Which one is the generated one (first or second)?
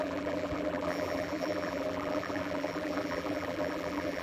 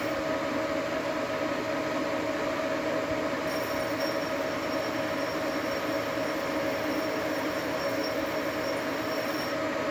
first